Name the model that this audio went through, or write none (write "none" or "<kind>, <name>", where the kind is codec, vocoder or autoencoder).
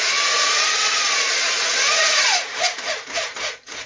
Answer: vocoder, Vocos